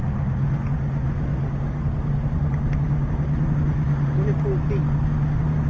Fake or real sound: real